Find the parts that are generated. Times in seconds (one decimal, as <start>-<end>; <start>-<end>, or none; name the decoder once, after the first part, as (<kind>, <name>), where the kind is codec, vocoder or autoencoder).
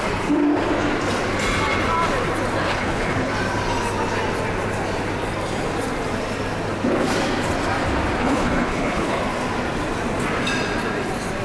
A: 2.6-3.3 (codec, HILCodec); 8.2-9.2